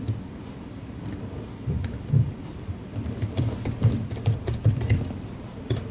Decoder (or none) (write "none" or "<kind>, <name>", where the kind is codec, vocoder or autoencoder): vocoder, BigVGAN v2